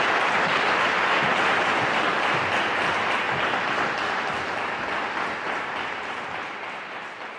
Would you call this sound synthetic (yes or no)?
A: no